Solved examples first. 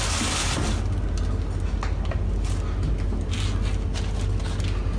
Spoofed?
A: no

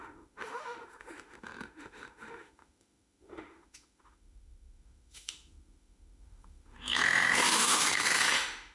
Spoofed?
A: yes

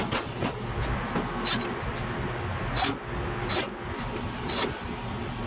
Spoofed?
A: no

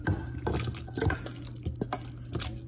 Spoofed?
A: no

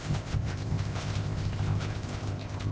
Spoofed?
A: yes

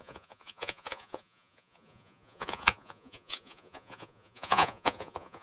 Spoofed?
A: yes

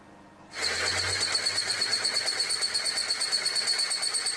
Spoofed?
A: no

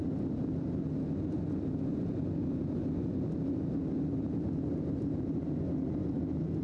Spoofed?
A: no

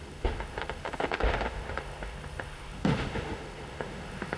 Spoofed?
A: yes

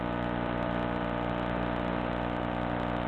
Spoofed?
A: no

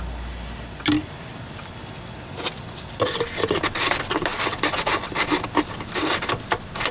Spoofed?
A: no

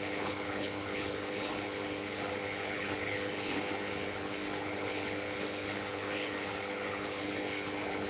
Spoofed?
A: yes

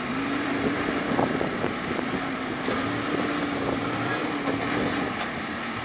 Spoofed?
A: yes